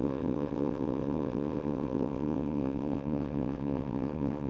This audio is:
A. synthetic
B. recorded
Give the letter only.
A